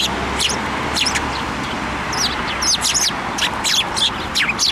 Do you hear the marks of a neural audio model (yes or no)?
no